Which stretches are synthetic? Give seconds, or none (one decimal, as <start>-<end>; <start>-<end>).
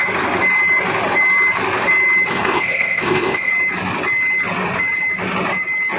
2.3-3.5